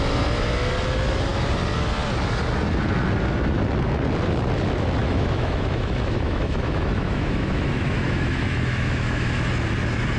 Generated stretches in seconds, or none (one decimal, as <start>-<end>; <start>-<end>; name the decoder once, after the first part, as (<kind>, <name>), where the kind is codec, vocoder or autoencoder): 5.0-9.5 (autoencoder, DAC-VAE)